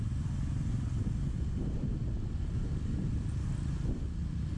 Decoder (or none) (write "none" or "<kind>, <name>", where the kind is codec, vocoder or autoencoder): none